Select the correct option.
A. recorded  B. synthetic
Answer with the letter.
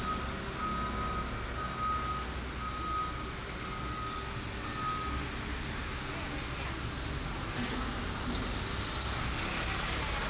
A